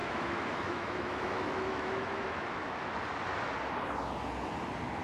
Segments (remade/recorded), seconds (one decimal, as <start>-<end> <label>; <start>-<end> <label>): 0.0-2.8 remade; 2.8-5.0 recorded